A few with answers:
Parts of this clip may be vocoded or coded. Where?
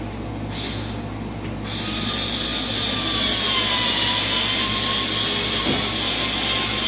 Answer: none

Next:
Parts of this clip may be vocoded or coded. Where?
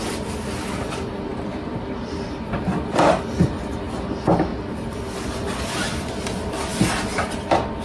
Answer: 1.3-3.8 (vocoder, BigVGAN v2); 4.5-5.0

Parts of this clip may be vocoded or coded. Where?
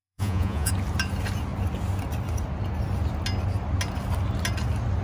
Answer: 0.0-0.7 (vocoder, Vocos)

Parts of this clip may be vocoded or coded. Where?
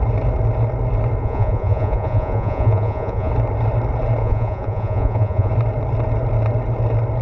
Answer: 1.2-3.3 (vocoder, Vocos); 4.2-5.5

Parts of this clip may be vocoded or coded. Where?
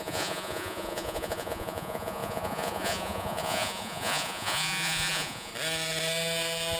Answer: 0.0-5.5 (vocoder, Vocos)